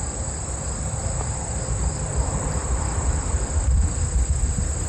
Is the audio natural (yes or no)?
yes